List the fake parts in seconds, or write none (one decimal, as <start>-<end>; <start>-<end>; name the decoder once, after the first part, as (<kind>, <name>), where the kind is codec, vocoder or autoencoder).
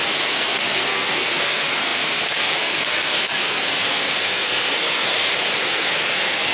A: 0.0-5.1 (codec, SNAC); 5.6-6.5